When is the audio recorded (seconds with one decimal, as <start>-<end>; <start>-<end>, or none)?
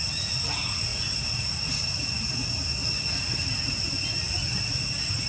0.0-2.8; 4.4-5.3